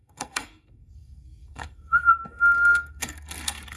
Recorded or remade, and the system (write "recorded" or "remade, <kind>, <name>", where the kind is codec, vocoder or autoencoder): remade, codec, SNAC